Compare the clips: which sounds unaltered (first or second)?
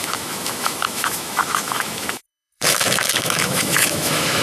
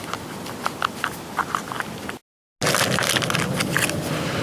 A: second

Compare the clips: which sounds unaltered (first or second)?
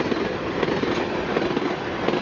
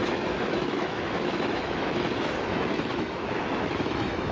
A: first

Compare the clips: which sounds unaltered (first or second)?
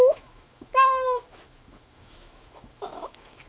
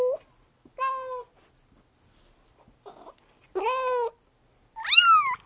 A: second